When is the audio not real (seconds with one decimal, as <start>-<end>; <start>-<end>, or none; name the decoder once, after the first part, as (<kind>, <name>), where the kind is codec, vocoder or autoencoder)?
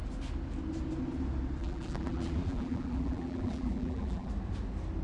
1.6-4.3 (vocoder, BigVGAN v2)